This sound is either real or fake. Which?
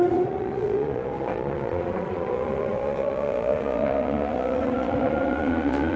fake